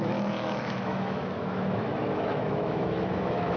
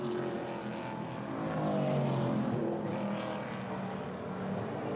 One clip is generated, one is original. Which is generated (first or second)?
first